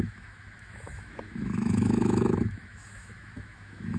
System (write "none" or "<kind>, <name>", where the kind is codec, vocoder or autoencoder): autoencoder, DAC-VAE